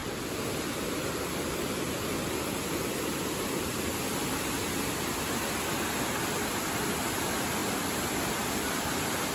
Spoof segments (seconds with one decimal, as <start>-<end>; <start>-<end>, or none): 0.0-3.6; 7.6-8.9